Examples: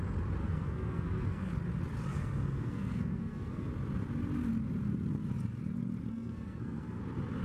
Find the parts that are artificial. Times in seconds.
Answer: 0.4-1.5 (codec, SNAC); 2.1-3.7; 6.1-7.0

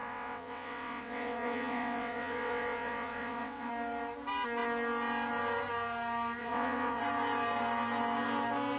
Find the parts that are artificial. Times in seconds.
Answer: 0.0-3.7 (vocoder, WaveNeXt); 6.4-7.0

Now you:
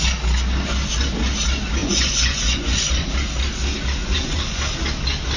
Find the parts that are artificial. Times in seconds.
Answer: 1.8-3.1 (vocoder, Vocos); 4.0-4.6

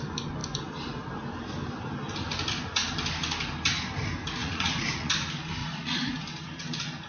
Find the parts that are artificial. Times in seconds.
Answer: 4.4-5.1 (vocoder, Vocos); 5.6-6.1